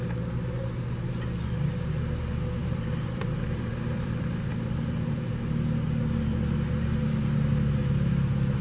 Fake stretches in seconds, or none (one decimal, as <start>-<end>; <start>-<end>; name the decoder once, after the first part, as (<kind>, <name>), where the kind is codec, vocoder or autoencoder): 2.6-5.3 (vocoder, BigVGAN v2)